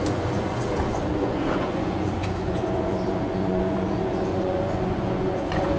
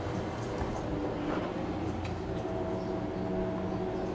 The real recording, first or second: second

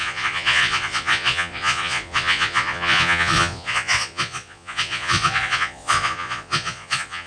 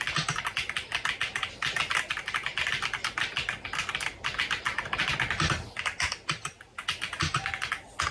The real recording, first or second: second